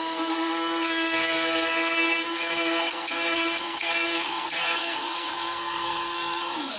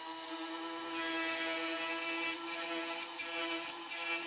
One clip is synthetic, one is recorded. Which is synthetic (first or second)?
first